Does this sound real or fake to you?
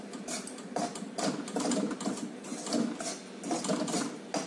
real